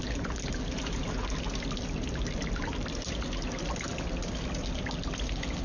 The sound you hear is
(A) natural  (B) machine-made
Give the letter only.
A